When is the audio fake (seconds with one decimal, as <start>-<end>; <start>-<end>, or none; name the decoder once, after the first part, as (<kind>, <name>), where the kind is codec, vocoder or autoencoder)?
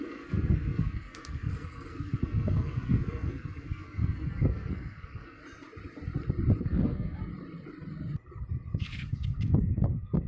0.0-5.4 (codec, SNAC); 6.6-7.3; 8.8-10.3